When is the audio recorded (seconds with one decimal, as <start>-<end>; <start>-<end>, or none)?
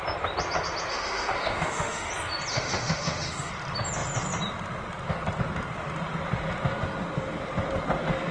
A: 0.0-0.9; 2.1-2.5; 3.5-8.3